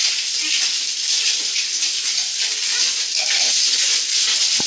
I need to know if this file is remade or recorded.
recorded